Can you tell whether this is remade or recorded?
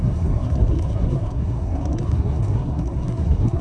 remade